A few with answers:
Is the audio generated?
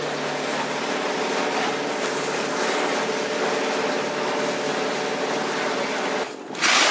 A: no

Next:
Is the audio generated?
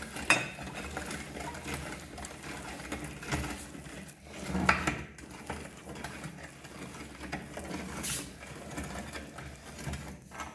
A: no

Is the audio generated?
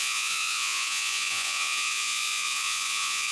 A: yes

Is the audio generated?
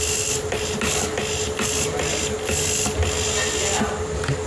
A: no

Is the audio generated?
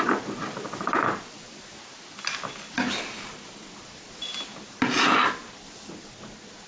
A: no